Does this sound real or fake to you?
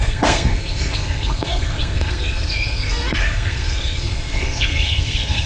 fake